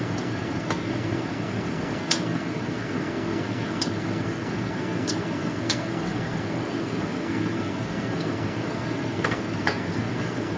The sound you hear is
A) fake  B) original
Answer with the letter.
A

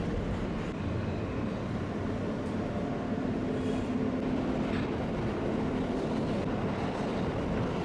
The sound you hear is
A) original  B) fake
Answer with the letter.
B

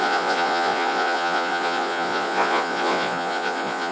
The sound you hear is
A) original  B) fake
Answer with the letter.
B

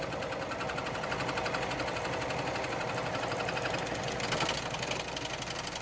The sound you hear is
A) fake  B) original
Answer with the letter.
B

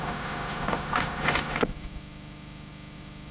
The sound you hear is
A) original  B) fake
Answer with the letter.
B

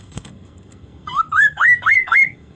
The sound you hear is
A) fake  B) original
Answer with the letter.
A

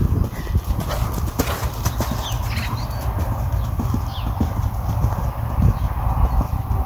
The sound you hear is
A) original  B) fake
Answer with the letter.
A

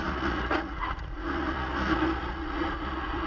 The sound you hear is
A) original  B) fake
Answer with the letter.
B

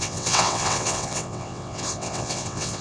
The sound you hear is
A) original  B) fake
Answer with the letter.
B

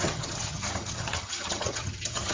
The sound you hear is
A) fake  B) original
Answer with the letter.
A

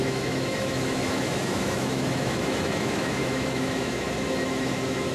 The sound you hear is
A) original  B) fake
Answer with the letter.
B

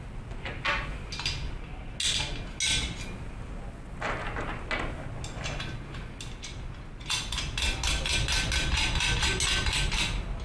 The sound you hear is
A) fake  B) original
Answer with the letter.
B